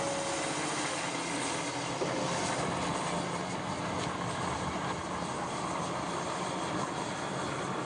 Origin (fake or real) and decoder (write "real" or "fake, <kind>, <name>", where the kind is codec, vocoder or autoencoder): real